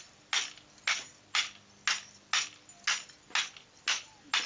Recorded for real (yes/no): yes